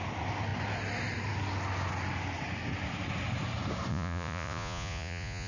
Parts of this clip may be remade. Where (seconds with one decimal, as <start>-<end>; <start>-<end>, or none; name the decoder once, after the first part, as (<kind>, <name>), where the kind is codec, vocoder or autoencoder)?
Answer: 3.9-5.5 (vocoder, Vocos)